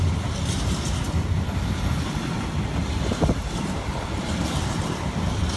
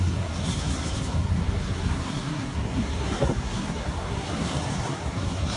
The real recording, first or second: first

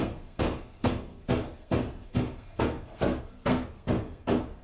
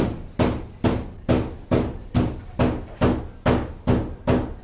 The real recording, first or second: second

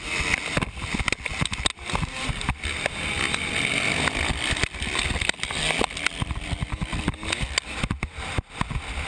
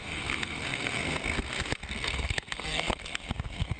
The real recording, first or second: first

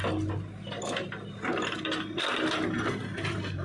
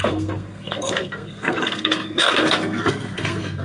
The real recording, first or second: first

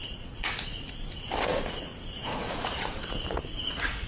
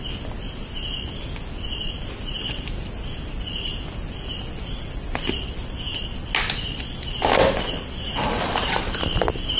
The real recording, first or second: second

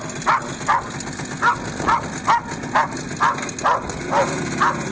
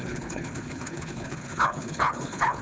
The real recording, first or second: first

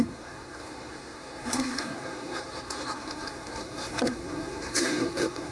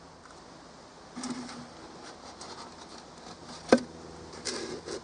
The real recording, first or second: second